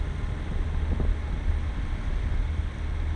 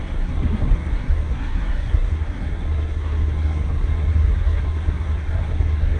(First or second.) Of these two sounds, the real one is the first